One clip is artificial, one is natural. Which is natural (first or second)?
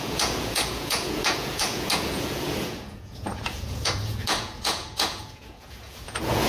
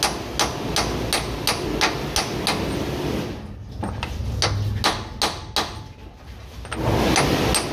second